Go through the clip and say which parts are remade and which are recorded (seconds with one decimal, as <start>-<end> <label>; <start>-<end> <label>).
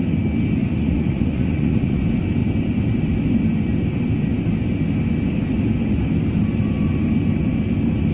0.0-0.6 recorded; 0.6-2.0 remade; 2.0-8.1 recorded